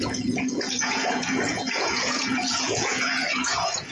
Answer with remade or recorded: remade